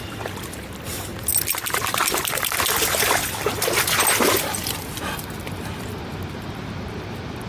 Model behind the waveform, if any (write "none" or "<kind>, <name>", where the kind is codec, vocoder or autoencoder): none